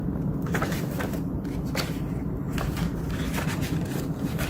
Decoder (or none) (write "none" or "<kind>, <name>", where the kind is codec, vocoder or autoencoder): none